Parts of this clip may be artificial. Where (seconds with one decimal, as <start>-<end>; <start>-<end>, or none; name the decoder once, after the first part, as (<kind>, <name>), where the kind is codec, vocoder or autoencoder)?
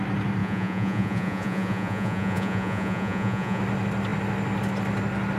0.4-3.6 (vocoder, Vocos)